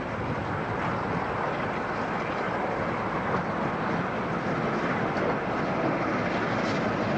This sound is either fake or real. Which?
real